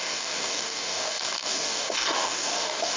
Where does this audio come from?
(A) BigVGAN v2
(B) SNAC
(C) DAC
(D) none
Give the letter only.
C